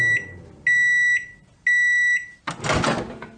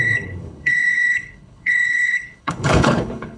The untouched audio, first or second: first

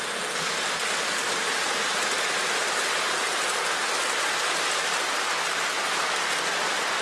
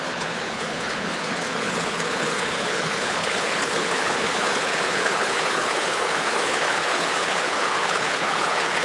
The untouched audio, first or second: first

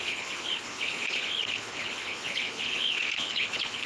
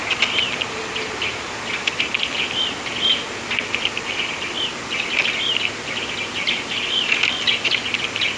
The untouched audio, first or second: second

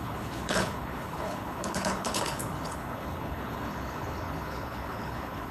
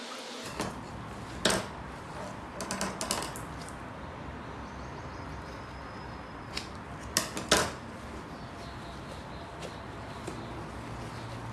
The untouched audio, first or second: second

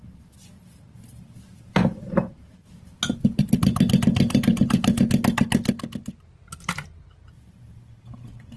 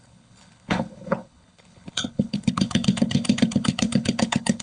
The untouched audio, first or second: first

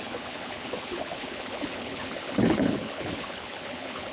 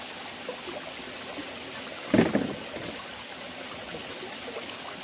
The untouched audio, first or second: second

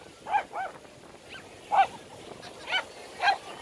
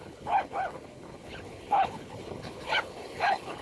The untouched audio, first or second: first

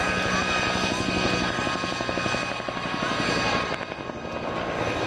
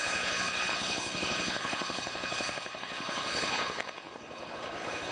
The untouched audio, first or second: first